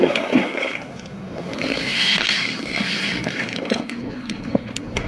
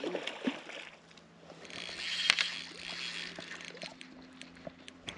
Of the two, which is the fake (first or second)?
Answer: first